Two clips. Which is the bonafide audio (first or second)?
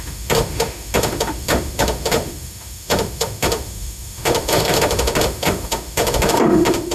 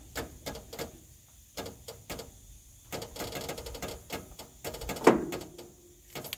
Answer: second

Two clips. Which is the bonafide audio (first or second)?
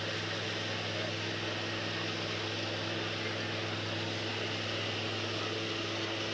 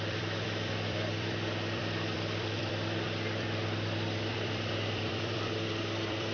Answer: first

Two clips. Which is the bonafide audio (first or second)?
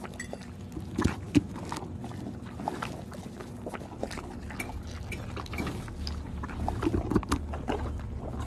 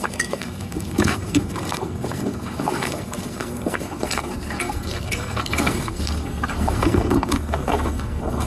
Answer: first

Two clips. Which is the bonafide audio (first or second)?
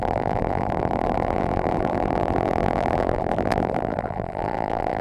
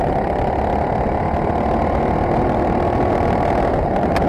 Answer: second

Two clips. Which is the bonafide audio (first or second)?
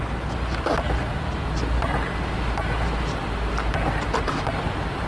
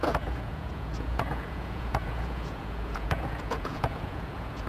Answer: first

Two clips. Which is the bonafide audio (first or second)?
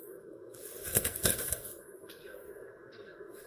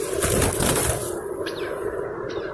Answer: second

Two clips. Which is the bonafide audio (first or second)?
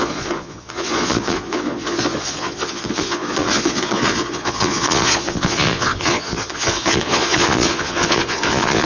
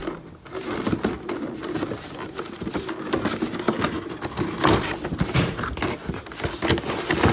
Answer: second